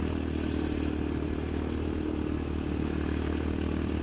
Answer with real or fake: real